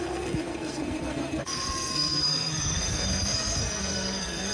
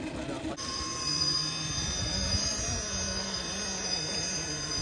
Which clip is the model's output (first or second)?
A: first